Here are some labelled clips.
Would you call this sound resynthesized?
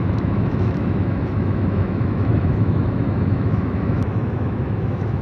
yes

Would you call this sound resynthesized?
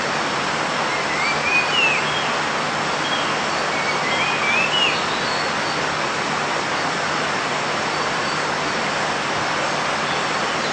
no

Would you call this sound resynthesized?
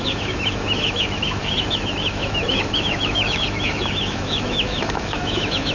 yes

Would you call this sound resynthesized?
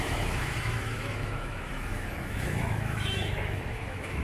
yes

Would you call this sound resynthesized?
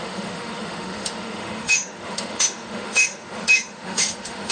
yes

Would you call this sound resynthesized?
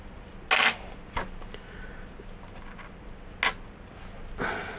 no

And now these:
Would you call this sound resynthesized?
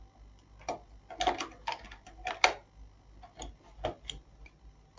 no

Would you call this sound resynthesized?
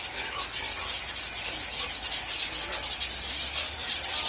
no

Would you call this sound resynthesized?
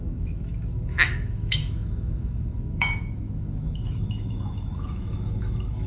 yes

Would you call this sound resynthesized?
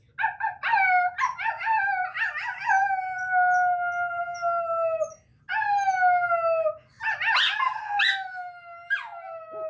no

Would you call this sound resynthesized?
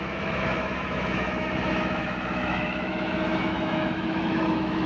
yes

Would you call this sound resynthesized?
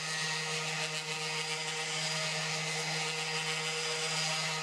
no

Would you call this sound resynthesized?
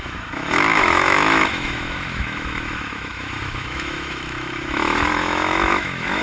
yes